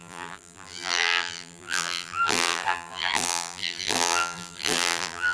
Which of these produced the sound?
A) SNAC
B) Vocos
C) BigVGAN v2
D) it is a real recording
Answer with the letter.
C